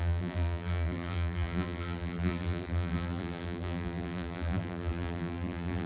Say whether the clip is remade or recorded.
remade